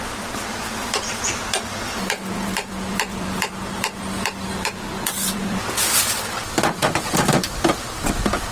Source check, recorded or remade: remade